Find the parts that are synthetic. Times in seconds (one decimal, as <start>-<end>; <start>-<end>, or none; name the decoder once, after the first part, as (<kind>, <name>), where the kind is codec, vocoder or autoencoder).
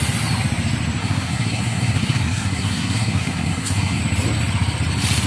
1.0-4.0 (codec, SNAC)